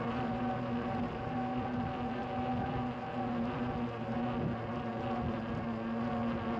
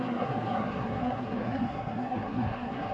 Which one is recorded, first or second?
first